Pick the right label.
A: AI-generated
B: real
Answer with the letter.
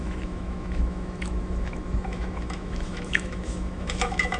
A